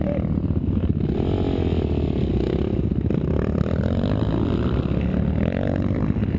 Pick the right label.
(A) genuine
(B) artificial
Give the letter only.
A